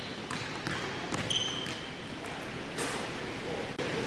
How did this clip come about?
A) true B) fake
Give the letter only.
A